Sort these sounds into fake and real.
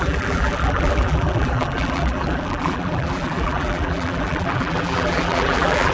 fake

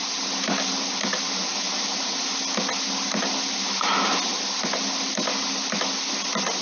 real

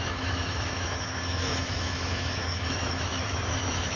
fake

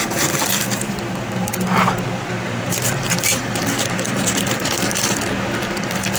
fake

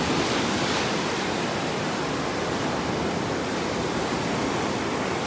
real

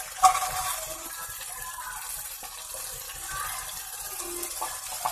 real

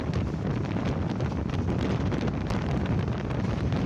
fake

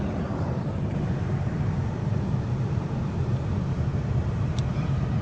fake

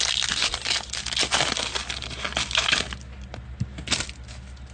real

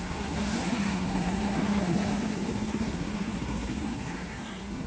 fake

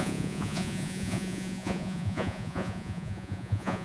fake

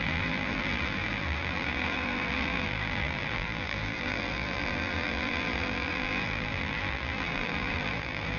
fake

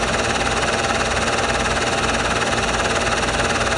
real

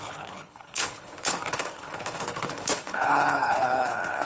fake